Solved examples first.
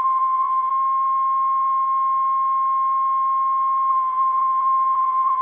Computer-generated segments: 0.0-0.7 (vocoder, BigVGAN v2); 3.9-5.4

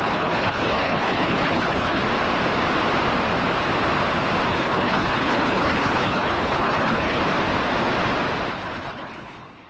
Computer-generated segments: 0.0-2.0 (codec, HILCodec); 4.5-7.2; 8.5-9.7

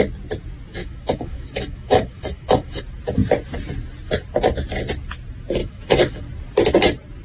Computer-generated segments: 0.8-2.8 (autoencoder, DAC-VAE); 5.6-6.2

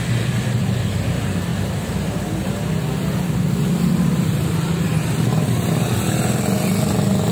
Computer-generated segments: none

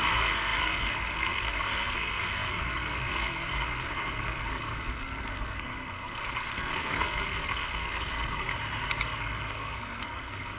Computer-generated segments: 0.0-8.5 (codec, SNAC); 9.2-10.6

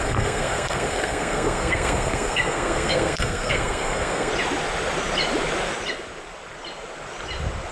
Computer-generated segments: 0.0-4.3 (codec, SNAC)